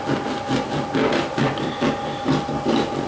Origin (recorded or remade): recorded